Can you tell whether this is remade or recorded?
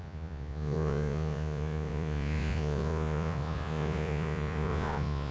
remade